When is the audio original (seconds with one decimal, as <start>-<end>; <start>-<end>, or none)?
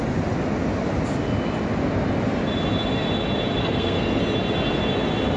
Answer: 0.0-3.6; 4.2-5.4